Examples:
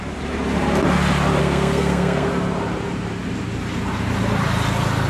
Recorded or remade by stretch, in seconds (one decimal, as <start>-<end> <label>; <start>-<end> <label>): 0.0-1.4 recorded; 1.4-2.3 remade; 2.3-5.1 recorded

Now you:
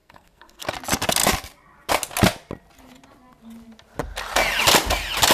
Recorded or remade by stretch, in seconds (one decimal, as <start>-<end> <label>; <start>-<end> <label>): 0.0-0.7 remade; 0.7-5.3 recorded

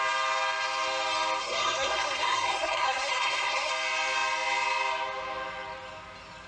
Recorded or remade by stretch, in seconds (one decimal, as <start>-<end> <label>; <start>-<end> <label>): 0.0-1.4 recorded; 1.4-3.7 remade; 3.7-6.5 recorded

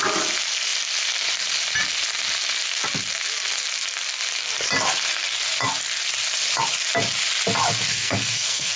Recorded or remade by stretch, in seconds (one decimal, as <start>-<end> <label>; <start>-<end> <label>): 0.0-7.9 recorded; 7.9-8.8 remade

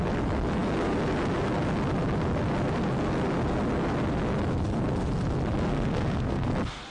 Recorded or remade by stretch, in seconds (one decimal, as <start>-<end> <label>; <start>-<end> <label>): 0.0-5.7 recorded; 5.7-6.5 remade; 6.5-6.9 recorded

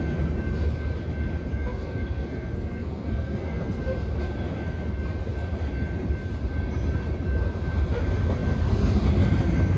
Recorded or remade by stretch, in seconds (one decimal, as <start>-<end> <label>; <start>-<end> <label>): 0.0-1.5 recorded; 1.5-3.8 remade; 3.8-9.8 recorded

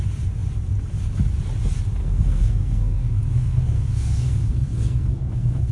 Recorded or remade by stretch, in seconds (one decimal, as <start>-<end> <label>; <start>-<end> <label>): 0.0-2.0 recorded; 2.0-5.7 remade

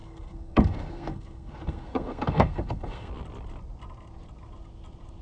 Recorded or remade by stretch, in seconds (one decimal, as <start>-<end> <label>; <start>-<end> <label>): 0.0-3.1 remade; 3.1-5.2 recorded